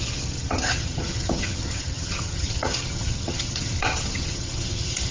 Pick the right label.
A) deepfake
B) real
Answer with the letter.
A